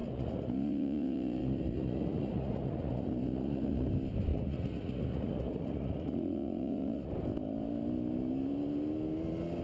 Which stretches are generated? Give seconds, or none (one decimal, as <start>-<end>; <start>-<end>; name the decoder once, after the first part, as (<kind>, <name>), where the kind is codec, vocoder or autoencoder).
0.0-3.9 (vocoder, Vocos); 4.3-7.1